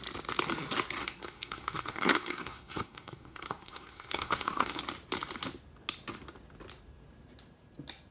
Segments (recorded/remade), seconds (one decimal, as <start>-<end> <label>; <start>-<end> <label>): 0.0-1.0 recorded; 1.0-4.8 remade; 4.8-8.1 recorded